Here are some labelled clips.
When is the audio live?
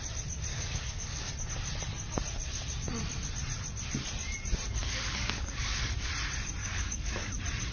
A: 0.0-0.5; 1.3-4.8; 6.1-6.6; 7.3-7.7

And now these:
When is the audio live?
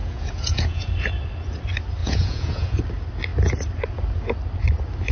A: 0.9-2.0; 2.8-5.1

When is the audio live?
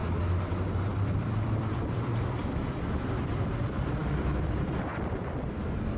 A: 0.0-0.9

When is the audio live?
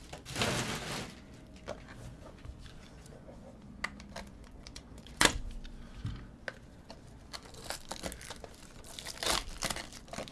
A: 0.0-2.1; 3.6-4.3; 5.5-10.3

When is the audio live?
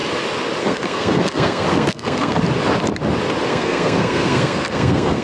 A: 0.0-0.6; 2.4-3.5